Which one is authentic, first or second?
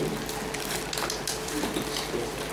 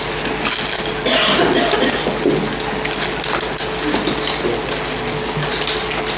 second